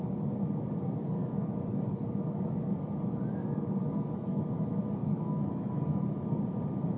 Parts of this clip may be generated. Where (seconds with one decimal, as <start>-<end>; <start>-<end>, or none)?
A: 1.0-4.4; 5.0-6.4